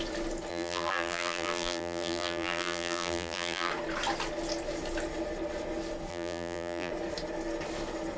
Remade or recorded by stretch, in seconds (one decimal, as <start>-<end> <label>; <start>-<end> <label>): 0.0-0.5 recorded; 0.5-3.7 remade; 3.7-6.1 recorded; 6.1-6.9 remade; 6.9-8.2 recorded

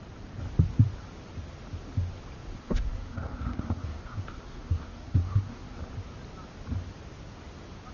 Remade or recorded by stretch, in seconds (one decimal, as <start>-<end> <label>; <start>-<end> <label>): 0.0-2.6 recorded; 2.6-5.8 remade; 5.8-7.9 recorded